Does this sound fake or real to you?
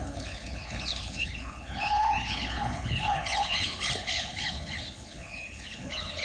fake